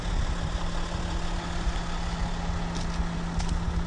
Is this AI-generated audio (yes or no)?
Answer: no